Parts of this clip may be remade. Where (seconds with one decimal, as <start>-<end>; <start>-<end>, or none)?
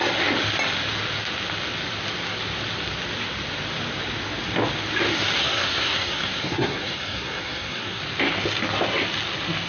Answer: 5.4-8.0